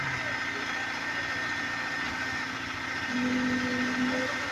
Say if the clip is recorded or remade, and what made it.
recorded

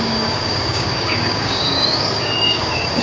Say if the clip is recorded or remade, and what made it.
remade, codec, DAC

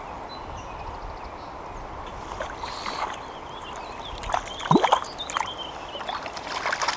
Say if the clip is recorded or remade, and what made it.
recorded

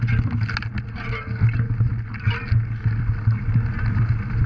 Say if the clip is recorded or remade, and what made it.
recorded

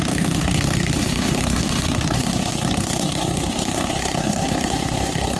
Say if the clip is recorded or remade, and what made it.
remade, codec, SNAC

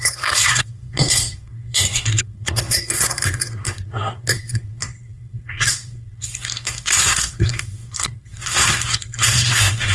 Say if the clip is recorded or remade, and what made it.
remade, codec, SNAC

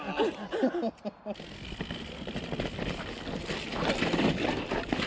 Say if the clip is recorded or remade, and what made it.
recorded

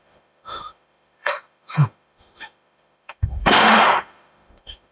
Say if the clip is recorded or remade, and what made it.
remade, autoencoder, DAC-VAE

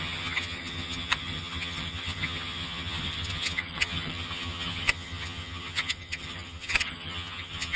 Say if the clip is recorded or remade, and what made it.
remade, vocoder, HiFi-GAN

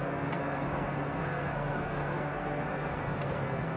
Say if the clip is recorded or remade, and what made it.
remade, codec, SNAC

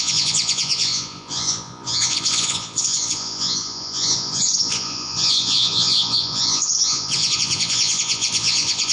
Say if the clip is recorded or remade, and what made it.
remade, vocoder, Vocos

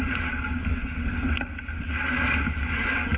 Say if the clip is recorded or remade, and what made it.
recorded